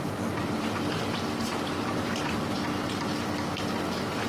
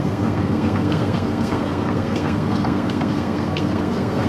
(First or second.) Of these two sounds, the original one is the first